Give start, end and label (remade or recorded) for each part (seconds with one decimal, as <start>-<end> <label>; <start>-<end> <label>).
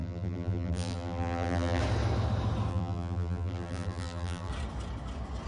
0.0-1.8 remade; 1.8-2.7 recorded; 2.7-4.5 remade; 4.5-5.5 recorded